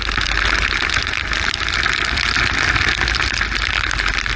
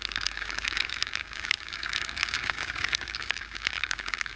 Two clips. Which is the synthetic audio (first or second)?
second